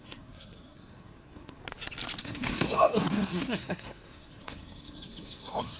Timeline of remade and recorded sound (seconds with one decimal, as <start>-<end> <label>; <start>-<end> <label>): 0.0-1.6 remade; 1.6-2.2 recorded; 2.2-5.8 remade